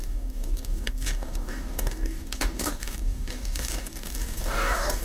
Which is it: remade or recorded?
remade